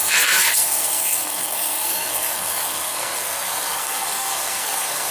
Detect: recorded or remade remade